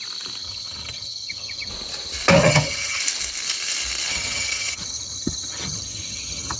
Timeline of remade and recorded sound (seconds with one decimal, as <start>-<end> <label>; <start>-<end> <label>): 0.0-0.4 recorded; 0.4-1.7 remade; 1.7-2.4 recorded; 2.4-3.0 remade; 3.0-4.1 recorded; 4.1-6.6 remade